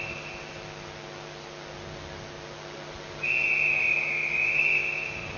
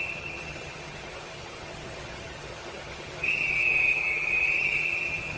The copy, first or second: second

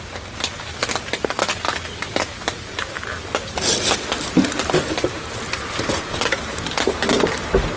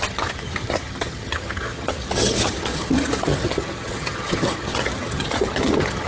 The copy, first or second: second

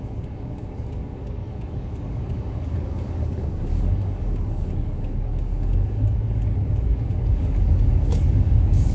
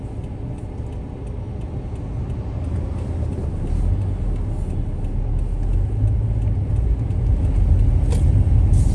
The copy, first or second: first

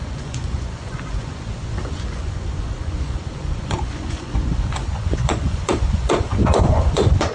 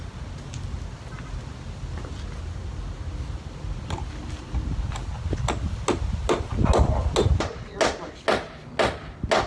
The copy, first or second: first